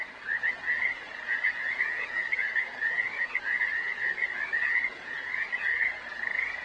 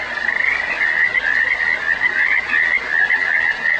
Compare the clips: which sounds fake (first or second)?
first